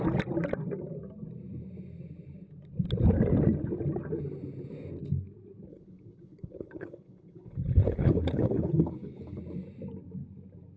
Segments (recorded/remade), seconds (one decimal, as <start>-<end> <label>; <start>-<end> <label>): 0.0-5.7 recorded; 5.7-9.4 remade; 9.4-10.8 recorded

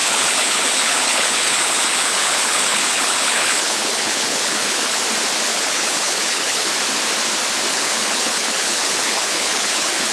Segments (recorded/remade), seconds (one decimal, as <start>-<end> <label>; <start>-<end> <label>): 0.0-5.0 remade; 5.0-5.5 recorded; 5.5-6.7 remade; 6.7-7.7 recorded; 7.7-10.1 remade

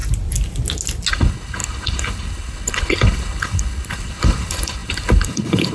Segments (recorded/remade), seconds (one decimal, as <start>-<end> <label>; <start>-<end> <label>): 0.0-1.1 recorded; 1.1-5.7 remade

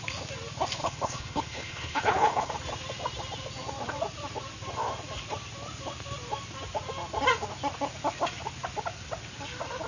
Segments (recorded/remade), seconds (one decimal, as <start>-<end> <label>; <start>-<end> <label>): 0.0-0.8 recorded; 0.8-2.5 remade; 2.5-9.9 recorded

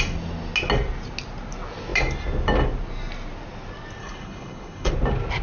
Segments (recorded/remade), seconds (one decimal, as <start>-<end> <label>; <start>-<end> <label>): 0.0-4.0 recorded; 4.0-4.9 remade; 4.9-5.4 recorded